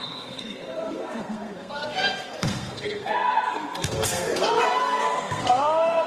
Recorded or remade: remade